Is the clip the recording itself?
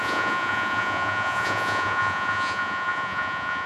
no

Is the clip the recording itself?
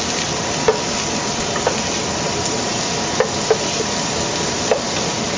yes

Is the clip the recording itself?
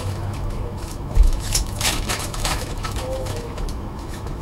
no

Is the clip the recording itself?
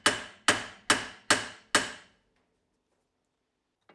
yes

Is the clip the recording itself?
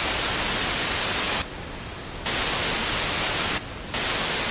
yes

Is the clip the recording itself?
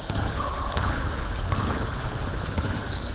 no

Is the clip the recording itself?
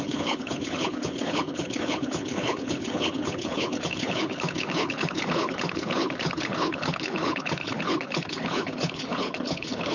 no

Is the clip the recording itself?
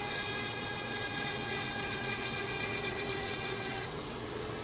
no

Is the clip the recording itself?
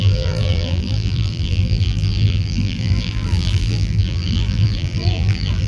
no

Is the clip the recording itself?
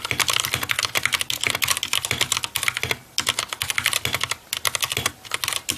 yes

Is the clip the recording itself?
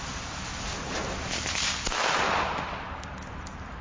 yes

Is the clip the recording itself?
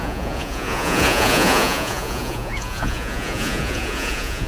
no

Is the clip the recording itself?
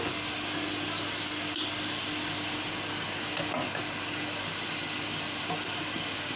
yes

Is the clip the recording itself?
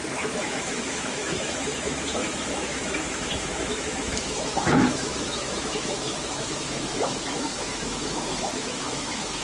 no